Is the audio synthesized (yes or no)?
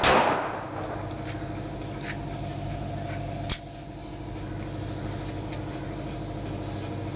no